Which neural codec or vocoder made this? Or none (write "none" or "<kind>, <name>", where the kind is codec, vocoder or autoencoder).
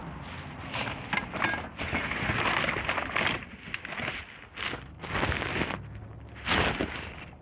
none